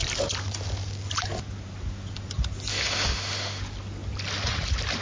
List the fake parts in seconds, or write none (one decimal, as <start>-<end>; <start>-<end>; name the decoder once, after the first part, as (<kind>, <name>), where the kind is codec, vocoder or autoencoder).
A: 2.7-3.6 (autoencoder, DAC-VAE)

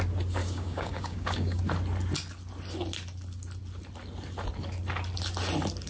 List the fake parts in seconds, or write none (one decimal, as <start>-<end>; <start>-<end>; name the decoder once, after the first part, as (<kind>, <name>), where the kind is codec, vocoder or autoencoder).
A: 0.4-1.6 (codec, DAC)

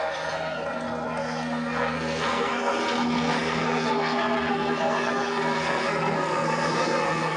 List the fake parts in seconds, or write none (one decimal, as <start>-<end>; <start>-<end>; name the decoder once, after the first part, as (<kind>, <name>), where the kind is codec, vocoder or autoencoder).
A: 0.0-7.4 (codec, SNAC)

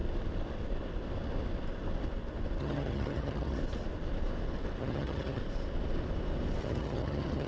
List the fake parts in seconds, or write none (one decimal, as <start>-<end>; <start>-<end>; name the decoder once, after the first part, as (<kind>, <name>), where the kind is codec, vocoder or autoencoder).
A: 2.6-3.6 (vocoder, HiFi-GAN); 4.8-5.4; 6.6-7.5

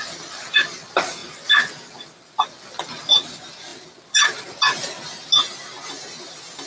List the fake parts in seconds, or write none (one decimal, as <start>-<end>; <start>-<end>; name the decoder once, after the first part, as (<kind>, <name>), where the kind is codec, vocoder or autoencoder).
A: none

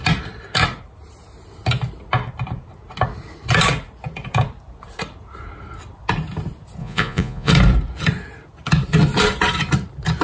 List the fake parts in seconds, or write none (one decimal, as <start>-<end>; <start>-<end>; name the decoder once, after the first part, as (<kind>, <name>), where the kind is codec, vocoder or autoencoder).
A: 6.8-7.5 (vocoder, Vocos)